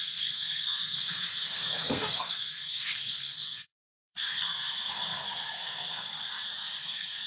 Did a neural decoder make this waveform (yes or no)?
yes